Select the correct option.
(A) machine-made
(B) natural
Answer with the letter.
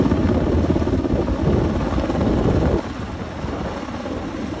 B